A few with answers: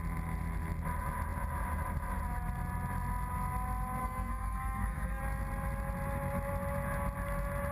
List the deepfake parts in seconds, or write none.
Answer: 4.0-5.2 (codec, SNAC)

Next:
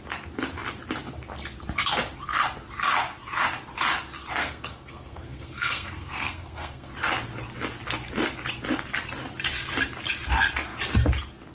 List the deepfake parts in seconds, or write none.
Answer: 4.4-6.9 (codec, SNAC)

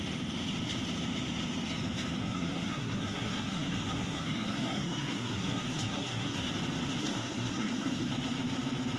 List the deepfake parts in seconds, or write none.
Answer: 2.2-6.5 (codec, SNAC); 7.0-8.1

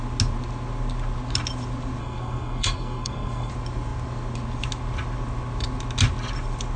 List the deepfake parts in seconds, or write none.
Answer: 2.0-3.5 (codec, SNAC)